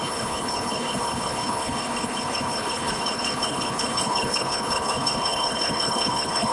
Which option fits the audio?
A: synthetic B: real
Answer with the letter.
A